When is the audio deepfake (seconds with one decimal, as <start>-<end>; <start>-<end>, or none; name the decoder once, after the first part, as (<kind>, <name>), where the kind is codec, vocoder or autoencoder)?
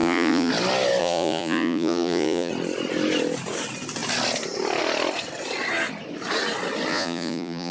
0.0-0.5 (vocoder, Vocos); 1.0-2.5; 6.9-7.7